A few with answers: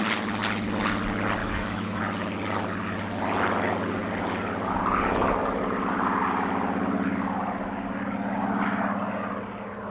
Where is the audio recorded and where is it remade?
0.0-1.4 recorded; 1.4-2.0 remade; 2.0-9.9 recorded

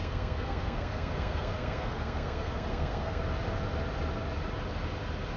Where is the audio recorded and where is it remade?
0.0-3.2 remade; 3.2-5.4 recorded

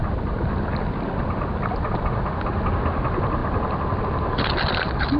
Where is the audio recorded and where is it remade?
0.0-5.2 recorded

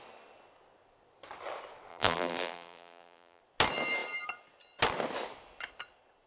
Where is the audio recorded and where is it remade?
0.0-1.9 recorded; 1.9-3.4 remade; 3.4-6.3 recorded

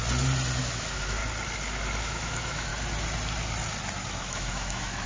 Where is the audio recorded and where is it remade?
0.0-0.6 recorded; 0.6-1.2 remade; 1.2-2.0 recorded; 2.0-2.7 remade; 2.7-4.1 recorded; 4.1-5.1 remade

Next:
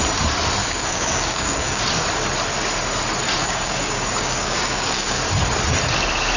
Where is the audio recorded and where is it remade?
0.0-0.6 recorded; 0.6-1.8 remade; 1.8-3.4 recorded; 3.4-5.2 remade; 5.2-6.4 recorded

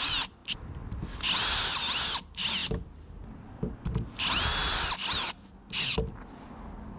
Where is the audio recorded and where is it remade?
0.0-7.0 recorded